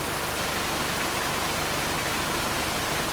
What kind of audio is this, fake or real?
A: real